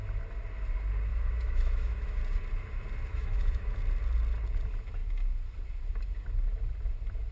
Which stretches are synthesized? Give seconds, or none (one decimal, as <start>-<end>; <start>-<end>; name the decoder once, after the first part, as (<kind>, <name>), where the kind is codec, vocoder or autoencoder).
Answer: 1.1-2.2 (autoencoder, DAC-VAE); 3.1-3.8